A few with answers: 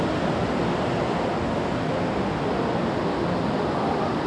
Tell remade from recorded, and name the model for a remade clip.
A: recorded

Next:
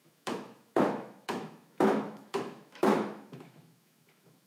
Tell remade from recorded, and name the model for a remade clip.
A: remade, autoencoder, DAC-VAE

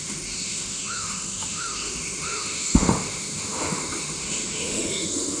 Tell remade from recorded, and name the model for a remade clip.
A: remade, autoencoder, DAC-VAE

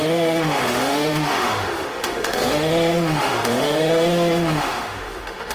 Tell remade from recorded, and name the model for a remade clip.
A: remade, autoencoder, DAC-VAE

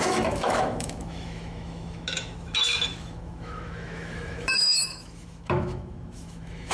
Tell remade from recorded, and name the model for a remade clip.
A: remade, autoencoder, DAC-VAE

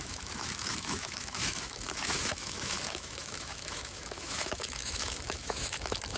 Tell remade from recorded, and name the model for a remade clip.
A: remade, autoencoder, DAC-VAE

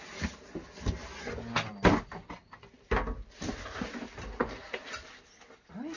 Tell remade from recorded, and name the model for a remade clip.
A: recorded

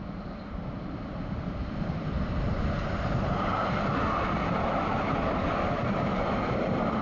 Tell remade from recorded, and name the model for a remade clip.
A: recorded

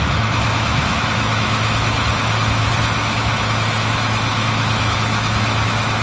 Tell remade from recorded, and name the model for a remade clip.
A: remade, autoencoder, DAC-VAE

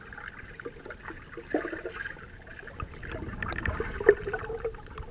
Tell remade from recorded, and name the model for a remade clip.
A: recorded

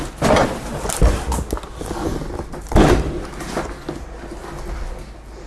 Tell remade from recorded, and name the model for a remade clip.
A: recorded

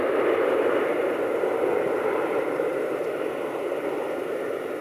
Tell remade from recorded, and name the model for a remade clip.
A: recorded